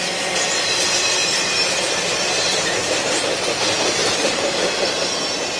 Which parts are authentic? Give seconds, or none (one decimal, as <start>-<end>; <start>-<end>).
0.0-1.2; 2.8-4.0